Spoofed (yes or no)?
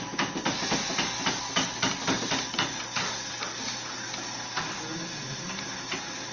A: no